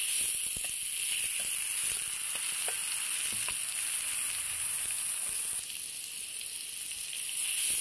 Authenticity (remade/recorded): recorded